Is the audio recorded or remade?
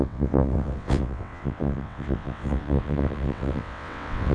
remade